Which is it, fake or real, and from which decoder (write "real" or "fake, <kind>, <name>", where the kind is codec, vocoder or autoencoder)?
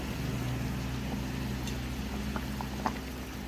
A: real